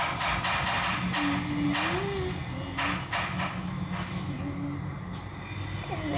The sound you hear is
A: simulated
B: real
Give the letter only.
B